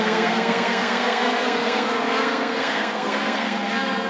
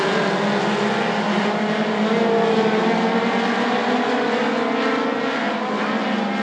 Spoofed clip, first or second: first